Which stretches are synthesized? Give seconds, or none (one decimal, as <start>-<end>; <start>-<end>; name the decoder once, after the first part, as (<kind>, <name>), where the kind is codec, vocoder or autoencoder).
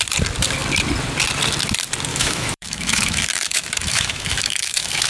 2.1-5.1 (autoencoder, DAC-VAE)